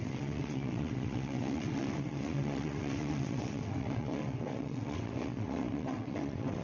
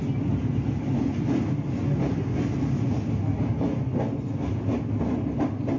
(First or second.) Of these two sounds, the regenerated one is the first